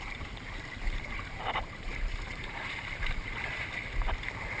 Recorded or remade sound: remade